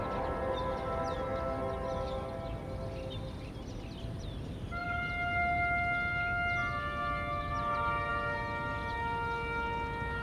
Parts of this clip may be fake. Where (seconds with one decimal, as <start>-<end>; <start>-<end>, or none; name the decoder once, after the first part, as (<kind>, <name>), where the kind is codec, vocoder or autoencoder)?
none

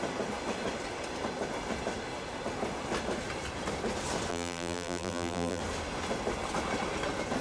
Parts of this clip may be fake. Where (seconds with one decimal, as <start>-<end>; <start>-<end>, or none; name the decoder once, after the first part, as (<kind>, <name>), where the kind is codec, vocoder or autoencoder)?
4.3-5.6 (vocoder, BigVGAN v2)

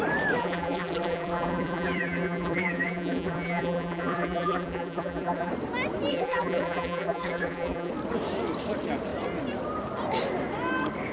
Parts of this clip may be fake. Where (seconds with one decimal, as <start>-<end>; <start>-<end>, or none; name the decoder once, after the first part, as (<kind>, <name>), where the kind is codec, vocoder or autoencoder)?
0.4-5.5 (vocoder, BigVGAN v2); 6.1-7.9

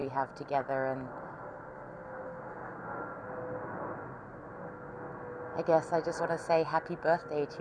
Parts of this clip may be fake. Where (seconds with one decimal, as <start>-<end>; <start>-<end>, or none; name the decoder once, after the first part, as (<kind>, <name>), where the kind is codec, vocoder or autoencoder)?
0.0-1.4 (vocoder, BigVGAN v2); 5.5-6.2

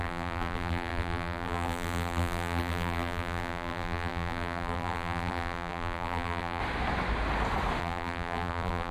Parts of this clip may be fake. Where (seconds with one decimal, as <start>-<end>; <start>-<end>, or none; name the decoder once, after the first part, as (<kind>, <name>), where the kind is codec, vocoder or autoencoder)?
0.0-6.6 (vocoder, BigVGAN v2); 7.8-8.9